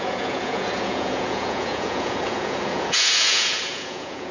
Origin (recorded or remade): remade